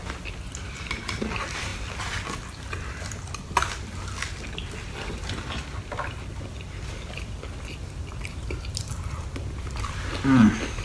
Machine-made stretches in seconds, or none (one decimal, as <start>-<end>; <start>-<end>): none